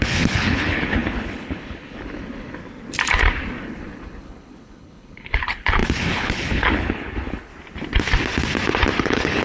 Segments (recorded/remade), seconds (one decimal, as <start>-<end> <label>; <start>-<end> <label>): 0.0-2.6 remade; 2.6-3.6 recorded; 3.6-7.5 remade; 7.5-9.0 recorded; 9.0-9.4 remade